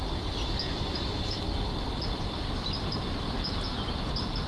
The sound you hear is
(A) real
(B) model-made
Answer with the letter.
A